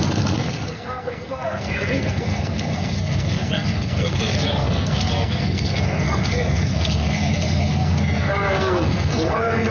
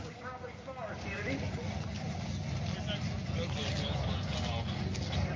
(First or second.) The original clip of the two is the second